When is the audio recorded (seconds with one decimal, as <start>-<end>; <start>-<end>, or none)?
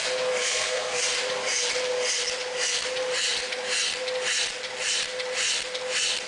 0.0-0.4; 1.0-6.3